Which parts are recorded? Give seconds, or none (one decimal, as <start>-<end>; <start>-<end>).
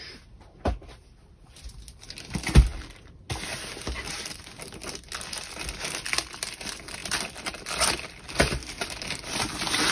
0.0-7.0